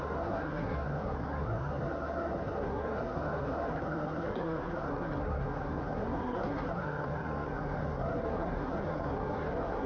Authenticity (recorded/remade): remade